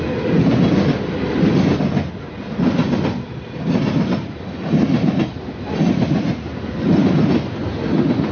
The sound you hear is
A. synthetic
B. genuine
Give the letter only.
B